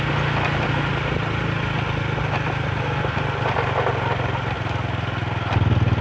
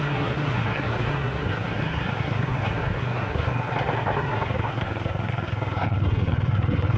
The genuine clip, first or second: first